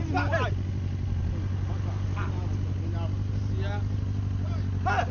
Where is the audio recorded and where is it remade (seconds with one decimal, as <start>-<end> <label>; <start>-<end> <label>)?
0.0-5.1 recorded

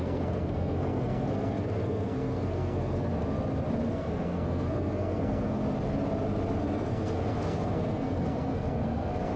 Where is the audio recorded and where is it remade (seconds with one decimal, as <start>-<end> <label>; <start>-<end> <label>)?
0.0-3.1 remade; 3.1-3.9 recorded; 3.9-5.6 remade; 5.6-6.6 recorded; 6.6-9.4 remade